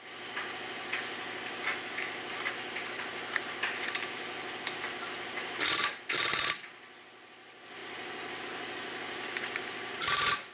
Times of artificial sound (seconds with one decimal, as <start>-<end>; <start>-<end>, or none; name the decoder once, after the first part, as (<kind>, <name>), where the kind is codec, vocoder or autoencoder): none